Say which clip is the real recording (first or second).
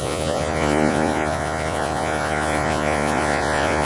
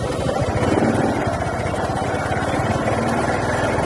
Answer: second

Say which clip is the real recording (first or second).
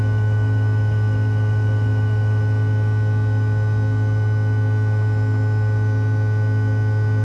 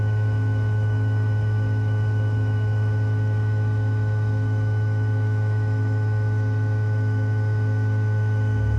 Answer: first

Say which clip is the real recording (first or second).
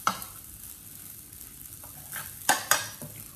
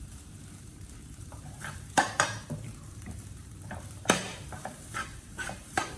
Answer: first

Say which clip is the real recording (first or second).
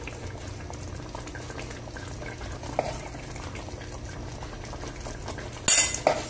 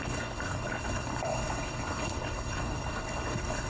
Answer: first